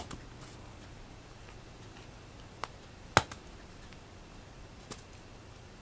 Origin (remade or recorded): recorded